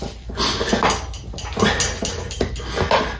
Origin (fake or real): real